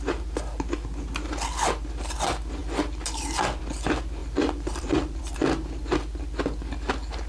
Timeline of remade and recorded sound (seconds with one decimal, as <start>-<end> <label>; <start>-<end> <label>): 0.0-4.2 recorded; 4.2-5.2 remade; 5.2-7.3 recorded